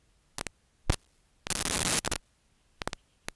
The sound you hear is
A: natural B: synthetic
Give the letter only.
A